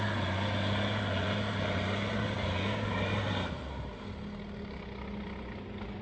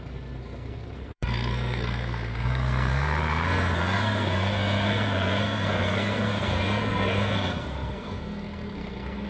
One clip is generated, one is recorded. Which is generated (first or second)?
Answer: second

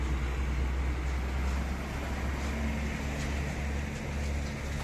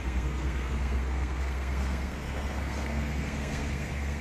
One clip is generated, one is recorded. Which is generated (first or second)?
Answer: second